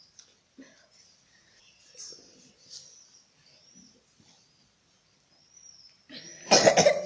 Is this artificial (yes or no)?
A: no